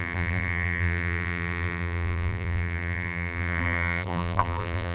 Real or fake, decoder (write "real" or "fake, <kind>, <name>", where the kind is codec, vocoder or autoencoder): fake, vocoder, BigVGAN v2